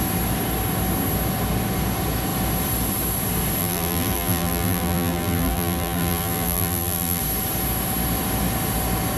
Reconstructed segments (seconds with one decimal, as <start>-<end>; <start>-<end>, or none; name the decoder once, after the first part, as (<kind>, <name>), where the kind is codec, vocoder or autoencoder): 3.6-7.2 (vocoder, BigVGAN v2)